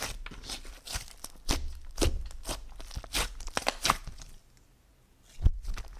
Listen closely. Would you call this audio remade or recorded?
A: recorded